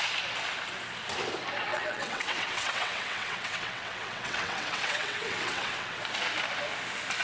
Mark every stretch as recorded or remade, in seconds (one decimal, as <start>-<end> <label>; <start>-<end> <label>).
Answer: 0.0-1.7 recorded; 1.7-6.0 remade; 6.0-7.2 recorded